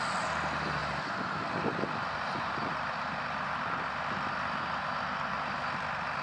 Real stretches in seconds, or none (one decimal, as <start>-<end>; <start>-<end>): 0.0-0.8; 3.5-6.2